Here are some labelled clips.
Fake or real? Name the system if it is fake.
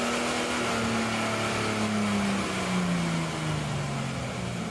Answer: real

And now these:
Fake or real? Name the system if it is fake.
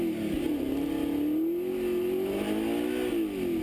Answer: real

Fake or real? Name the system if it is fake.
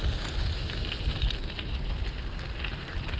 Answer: real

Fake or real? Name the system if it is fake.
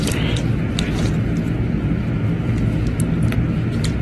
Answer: real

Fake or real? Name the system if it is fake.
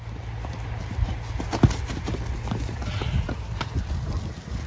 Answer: real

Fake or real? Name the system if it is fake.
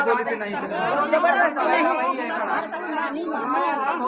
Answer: real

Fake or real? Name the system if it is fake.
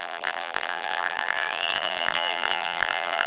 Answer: fake, vocoder, BigVGAN v2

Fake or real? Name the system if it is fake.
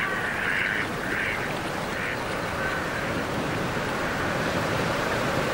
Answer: fake, vocoder, BigVGAN v2